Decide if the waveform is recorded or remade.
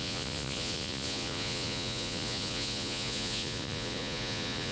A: remade